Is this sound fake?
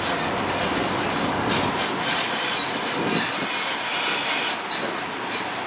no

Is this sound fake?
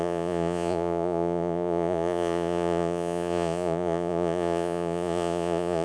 yes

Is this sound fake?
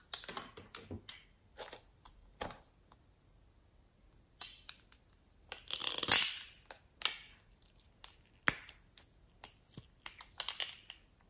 no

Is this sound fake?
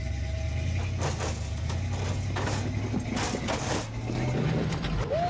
no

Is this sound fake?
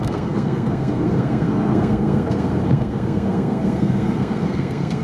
yes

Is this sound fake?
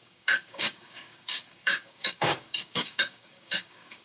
yes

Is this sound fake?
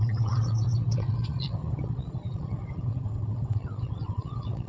yes